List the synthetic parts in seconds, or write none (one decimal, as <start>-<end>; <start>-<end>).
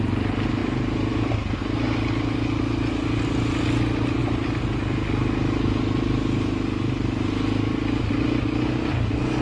none